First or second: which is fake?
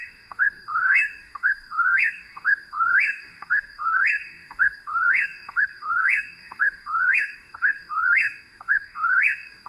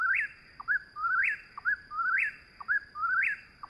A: first